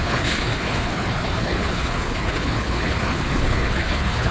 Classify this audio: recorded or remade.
remade